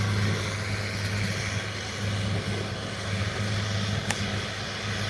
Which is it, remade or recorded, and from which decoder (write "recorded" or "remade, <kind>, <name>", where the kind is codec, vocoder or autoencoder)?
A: recorded